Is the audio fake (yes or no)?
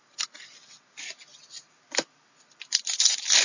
no